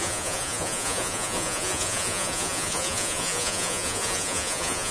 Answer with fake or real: fake